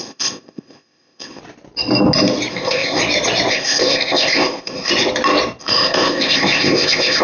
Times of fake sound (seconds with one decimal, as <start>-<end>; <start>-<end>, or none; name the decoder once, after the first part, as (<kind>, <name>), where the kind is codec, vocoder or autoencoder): 0.0-1.4 (codec, ZipCodec); 2.5-3.0; 3.5-4.9; 5.6-7.2